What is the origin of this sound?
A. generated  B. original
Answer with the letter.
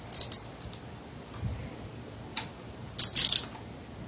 B